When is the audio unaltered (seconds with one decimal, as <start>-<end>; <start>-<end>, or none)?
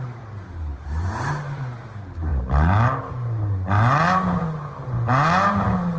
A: 0.0-6.0